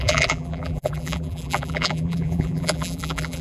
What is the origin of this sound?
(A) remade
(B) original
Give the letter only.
A